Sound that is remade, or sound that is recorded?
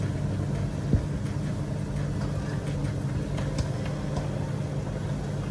recorded